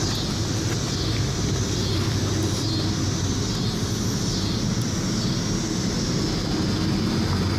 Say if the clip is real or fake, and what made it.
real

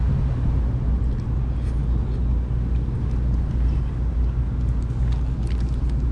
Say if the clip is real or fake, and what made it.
real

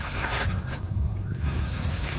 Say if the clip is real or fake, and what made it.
fake, codec, SNAC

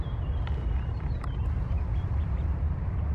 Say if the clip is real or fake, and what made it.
real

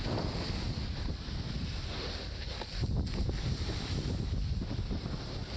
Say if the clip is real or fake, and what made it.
real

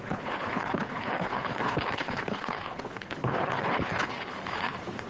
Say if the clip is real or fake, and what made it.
fake, codec, HILCodec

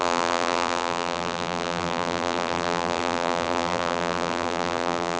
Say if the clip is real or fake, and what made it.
fake, vocoder, BigVGAN v2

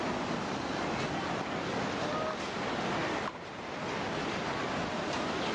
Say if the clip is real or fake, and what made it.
real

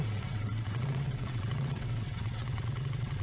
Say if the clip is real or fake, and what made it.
fake, vocoder, WaveNeXt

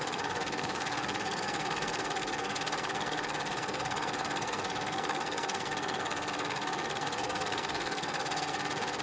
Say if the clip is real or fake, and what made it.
fake, codec, SNAC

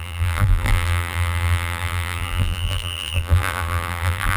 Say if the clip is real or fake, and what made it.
fake, vocoder, BigVGAN v2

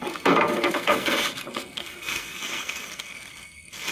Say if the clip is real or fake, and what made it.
fake, codec, SNAC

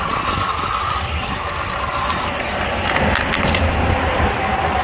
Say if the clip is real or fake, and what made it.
real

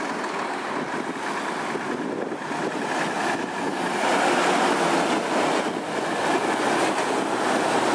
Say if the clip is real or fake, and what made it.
real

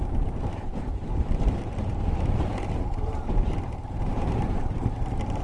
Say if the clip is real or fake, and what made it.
fake, vocoder, BigVGAN v2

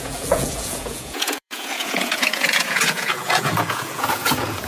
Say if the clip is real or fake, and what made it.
fake, vocoder, Vocos